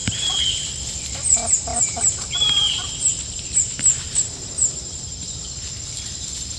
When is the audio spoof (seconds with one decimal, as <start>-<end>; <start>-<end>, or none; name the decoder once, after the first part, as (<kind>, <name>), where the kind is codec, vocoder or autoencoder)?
0.0-0.7 (vocoder, BigVGAN v2); 1.7-5.6